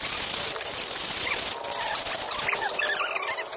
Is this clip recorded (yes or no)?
yes